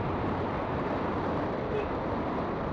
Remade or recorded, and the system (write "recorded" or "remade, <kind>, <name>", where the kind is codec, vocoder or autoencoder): recorded